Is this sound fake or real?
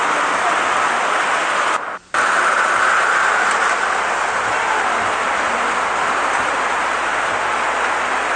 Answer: real